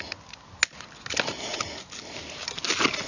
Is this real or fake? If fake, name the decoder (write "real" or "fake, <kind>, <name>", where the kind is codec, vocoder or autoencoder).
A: real